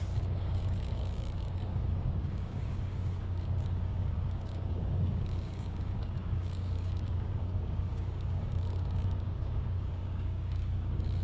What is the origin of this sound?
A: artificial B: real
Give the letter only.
A